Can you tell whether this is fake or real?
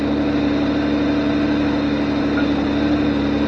real